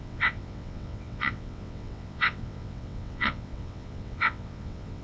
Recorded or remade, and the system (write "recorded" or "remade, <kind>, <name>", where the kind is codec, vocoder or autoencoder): remade, vocoder, WaveNeXt